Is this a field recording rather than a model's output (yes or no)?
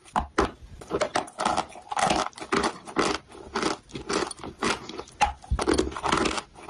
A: yes